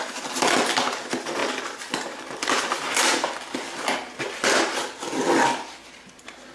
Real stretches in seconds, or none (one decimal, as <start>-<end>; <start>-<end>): 0.0-6.5